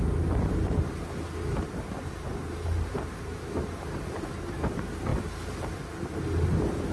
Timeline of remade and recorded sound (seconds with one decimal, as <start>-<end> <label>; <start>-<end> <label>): 0.0-6.9 recorded